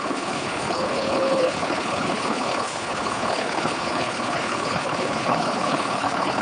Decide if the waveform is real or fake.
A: fake